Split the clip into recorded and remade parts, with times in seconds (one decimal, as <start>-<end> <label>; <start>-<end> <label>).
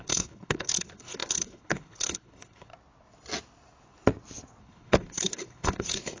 0.0-2.7 remade; 2.7-4.6 recorded; 4.6-6.2 remade